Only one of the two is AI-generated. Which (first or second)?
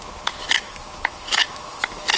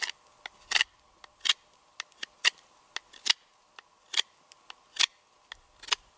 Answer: first